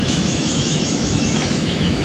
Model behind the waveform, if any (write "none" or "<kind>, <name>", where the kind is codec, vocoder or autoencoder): autoencoder, DAC-VAE